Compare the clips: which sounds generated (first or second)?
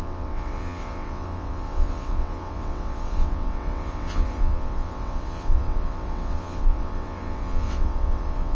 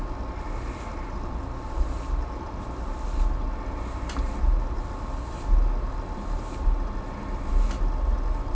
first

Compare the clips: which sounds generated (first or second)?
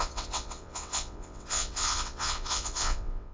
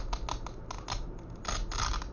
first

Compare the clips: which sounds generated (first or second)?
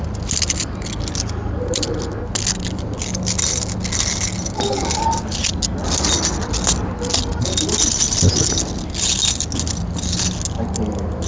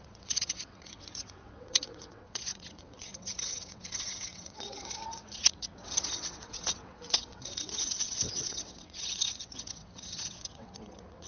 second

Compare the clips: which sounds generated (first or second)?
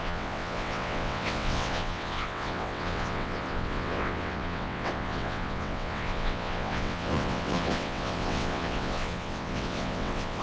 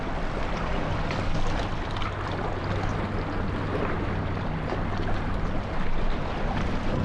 first